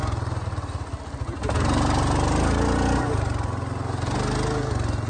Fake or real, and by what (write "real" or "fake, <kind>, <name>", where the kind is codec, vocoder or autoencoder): real